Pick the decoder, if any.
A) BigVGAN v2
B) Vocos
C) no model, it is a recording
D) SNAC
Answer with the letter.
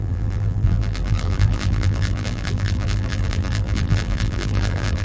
A